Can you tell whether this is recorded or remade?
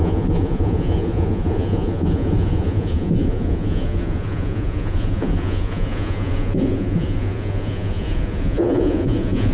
remade